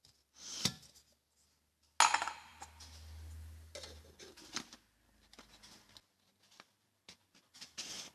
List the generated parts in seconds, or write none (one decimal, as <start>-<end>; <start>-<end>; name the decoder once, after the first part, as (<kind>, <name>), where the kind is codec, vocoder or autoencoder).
none